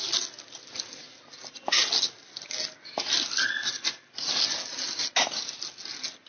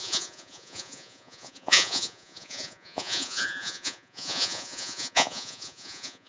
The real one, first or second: first